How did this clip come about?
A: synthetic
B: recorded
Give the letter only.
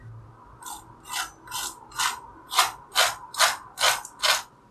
B